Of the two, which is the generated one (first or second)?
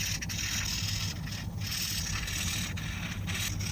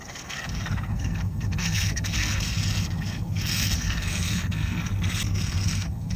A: second